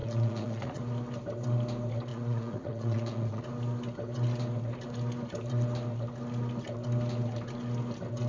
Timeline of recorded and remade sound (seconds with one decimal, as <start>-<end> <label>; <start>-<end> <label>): 0.0-0.8 remade; 0.8-2.1 recorded; 2.1-3.4 remade; 3.4-8.3 recorded